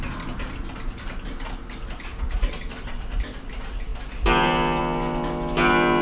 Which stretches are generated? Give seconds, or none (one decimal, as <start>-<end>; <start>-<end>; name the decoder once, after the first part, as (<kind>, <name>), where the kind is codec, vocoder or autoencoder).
none